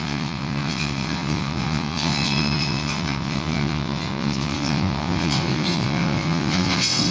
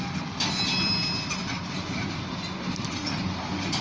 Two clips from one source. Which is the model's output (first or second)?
first